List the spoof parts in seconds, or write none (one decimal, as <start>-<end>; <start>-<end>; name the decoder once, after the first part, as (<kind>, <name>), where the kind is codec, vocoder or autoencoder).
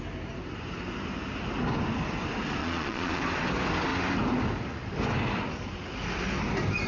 2.6-3.2 (vocoder, Vocos)